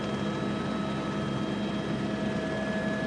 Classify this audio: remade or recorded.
recorded